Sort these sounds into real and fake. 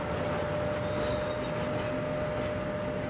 real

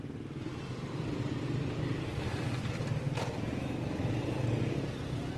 fake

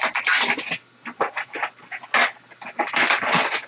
real